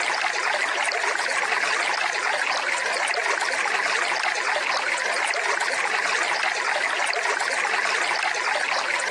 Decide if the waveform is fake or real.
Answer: real